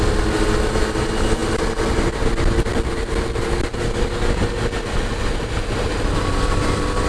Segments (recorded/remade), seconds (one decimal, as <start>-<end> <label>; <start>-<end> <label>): 0.0-7.1 recorded